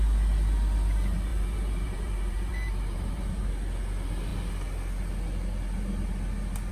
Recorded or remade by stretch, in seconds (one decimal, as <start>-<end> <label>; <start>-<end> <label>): 0.0-1.3 recorded; 1.3-3.5 remade; 3.5-6.7 recorded

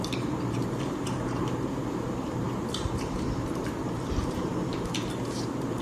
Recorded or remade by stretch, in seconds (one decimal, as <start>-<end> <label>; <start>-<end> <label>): 0.0-4.5 remade; 4.5-5.3 recorded; 5.3-5.8 remade

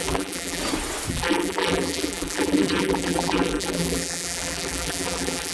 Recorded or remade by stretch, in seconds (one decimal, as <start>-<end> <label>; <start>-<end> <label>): 0.0-0.6 remade; 0.6-1.1 recorded; 1.1-5.5 remade

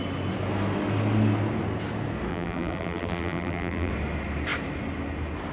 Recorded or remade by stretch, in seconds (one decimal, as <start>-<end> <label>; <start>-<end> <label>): 0.0-2.3 recorded; 2.3-3.9 remade; 3.9-5.5 recorded